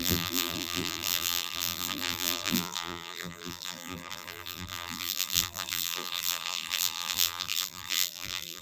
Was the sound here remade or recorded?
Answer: remade